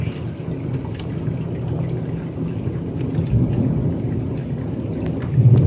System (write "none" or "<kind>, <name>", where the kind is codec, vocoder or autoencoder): none